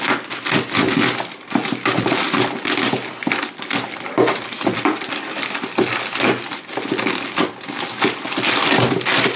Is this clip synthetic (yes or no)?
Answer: no